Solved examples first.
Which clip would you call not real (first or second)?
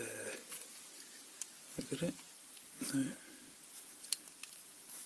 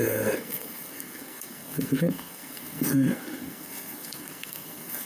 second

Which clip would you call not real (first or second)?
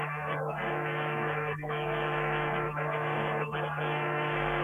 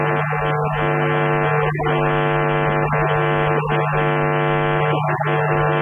first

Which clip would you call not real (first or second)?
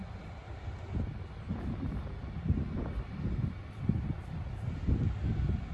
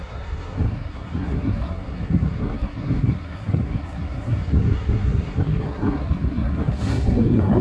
second